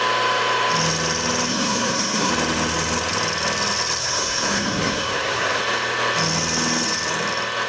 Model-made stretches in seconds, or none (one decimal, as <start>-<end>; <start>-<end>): 1.5-2.3; 4.0-5.6